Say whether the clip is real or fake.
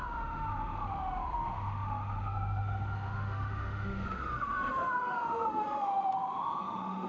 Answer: fake